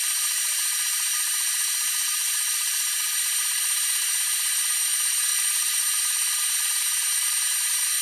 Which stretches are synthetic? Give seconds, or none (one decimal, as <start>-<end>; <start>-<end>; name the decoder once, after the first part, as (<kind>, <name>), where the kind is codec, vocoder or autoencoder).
5.3-5.8 (vocoder, BigVGAN v2)